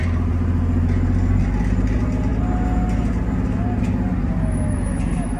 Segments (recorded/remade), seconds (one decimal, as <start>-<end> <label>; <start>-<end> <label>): 0.0-5.4 recorded